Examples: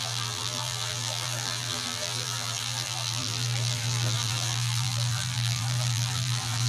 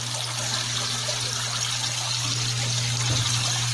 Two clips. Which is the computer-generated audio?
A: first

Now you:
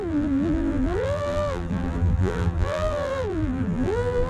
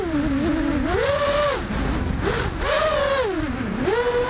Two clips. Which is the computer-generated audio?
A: first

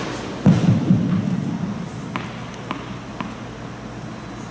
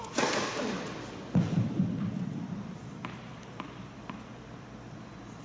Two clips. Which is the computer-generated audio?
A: second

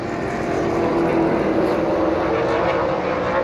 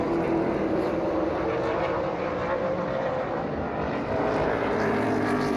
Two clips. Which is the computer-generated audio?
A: second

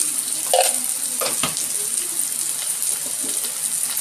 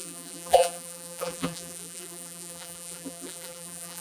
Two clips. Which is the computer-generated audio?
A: second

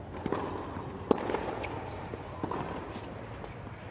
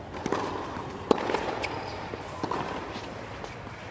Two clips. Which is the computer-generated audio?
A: second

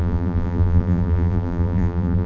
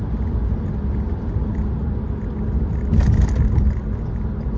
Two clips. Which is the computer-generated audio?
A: first